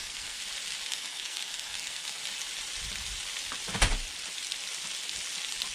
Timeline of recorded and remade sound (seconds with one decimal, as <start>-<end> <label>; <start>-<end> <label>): 0.0-0.4 remade; 0.4-0.9 recorded; 0.9-2.2 remade; 2.2-5.7 recorded